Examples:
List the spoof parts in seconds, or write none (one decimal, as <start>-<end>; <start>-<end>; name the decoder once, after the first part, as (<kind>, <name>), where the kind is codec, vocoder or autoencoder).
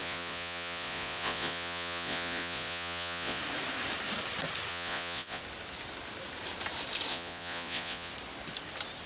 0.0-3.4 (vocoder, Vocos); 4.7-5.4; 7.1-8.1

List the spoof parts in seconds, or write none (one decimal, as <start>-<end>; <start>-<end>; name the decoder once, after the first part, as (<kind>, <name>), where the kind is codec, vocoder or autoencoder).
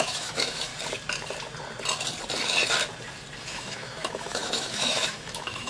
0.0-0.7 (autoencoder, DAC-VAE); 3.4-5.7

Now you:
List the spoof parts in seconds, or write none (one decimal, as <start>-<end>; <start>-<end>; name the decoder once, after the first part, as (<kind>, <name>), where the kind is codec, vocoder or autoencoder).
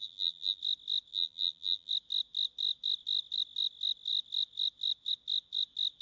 0.0-0.6 (vocoder, BigVGAN v2); 1.1-1.9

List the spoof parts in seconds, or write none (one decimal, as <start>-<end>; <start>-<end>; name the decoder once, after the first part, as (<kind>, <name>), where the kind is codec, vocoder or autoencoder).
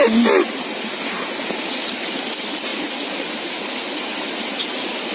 2.7-3.3 (vocoder, BigVGAN v2)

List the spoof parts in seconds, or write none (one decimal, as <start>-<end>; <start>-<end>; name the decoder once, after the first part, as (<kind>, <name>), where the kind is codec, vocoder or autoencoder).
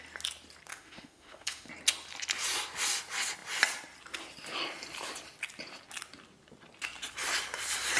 0.7-1.7 (autoencoder, DAC-VAE)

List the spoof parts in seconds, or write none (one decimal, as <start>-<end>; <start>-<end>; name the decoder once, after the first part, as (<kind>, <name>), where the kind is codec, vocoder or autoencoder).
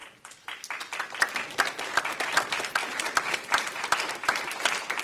2.8-5.0 (vocoder, BigVGAN v2)